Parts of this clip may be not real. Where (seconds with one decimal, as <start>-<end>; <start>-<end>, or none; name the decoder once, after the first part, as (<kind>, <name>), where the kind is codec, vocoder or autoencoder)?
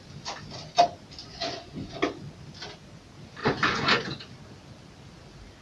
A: 1.2-2.0 (vocoder, Vocos); 3.4-4.3